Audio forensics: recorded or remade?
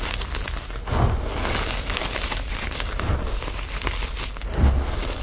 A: recorded